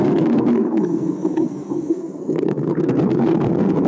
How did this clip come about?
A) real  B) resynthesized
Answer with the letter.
B